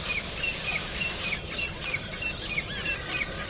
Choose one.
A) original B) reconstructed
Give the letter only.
A